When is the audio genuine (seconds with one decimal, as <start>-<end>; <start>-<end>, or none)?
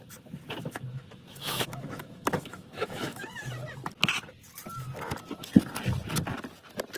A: 0.0-0.6; 3.5-7.0